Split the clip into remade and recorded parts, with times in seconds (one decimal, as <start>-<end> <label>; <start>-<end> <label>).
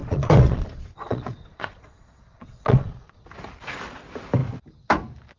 0.0-3.2 remade; 3.2-5.4 recorded